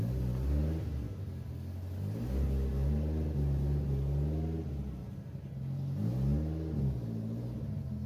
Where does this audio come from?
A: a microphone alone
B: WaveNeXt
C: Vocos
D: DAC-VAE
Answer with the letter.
A